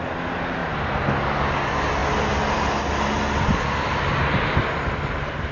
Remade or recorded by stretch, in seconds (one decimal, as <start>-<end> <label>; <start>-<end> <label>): 0.0-5.5 recorded

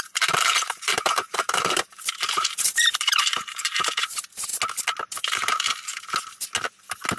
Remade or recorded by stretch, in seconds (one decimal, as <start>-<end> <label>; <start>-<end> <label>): 0.0-4.5 remade; 4.5-5.2 recorded; 5.2-5.9 remade; 5.9-7.2 recorded

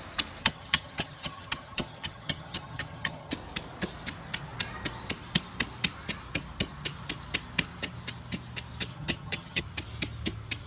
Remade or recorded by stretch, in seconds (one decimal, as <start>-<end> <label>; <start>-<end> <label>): 0.0-0.4 recorded; 0.4-3.3 remade; 3.3-8.9 recorded; 8.9-9.6 remade; 9.6-10.7 recorded

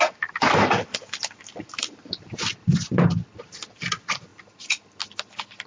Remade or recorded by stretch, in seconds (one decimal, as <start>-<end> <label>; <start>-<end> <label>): 0.0-5.7 recorded